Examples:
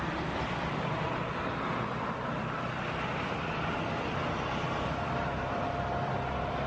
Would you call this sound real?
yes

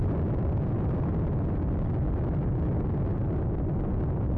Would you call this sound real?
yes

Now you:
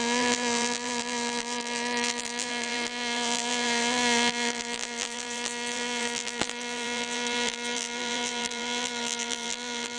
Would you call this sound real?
no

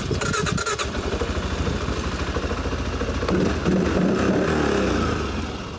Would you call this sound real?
yes